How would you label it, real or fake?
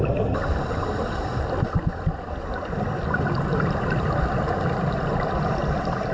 real